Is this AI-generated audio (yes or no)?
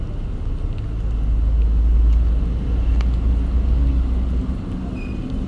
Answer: no